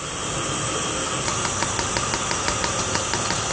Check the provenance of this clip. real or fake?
real